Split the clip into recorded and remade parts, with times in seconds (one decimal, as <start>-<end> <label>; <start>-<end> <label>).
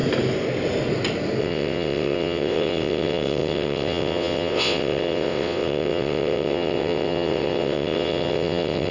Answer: 0.0-1.4 recorded; 1.4-8.9 remade